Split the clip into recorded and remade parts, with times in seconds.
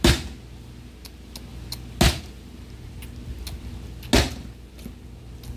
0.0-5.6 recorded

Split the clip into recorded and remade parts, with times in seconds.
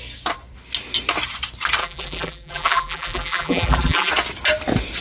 0.0-1.8 recorded; 1.8-4.1 remade; 4.1-5.0 recorded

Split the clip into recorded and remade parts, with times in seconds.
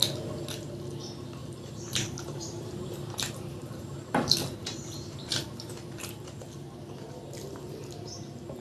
0.0-1.4 recorded; 1.4-6.1 remade; 6.1-8.6 recorded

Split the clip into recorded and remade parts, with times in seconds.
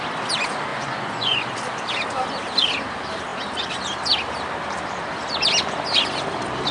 0.0-0.7 recorded; 0.7-1.4 remade; 1.4-6.7 recorded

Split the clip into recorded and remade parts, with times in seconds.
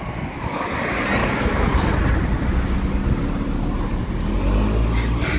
0.0-1.2 recorded; 1.2-1.7 remade; 1.7-5.4 recorded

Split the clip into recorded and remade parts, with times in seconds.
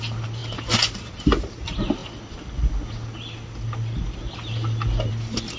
0.0-5.6 recorded